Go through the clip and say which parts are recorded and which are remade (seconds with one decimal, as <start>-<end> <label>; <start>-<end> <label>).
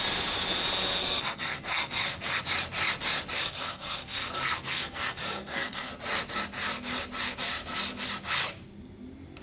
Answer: 0.0-1.0 recorded; 1.0-2.4 remade; 2.4-3.4 recorded; 3.4-5.9 remade; 5.9-9.4 recorded